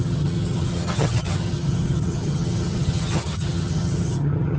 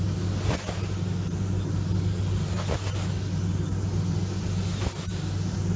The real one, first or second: second